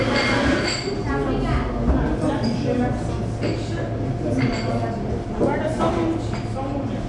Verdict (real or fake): real